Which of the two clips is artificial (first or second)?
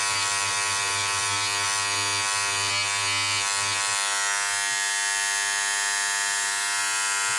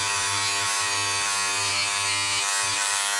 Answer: second